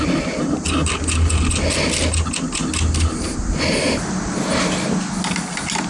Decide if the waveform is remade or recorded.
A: recorded